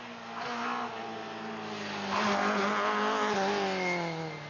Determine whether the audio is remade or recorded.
recorded